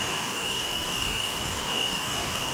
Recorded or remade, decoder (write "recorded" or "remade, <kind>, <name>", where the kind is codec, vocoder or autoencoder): remade, codec, DAC